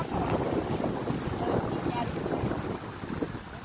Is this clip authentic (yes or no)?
yes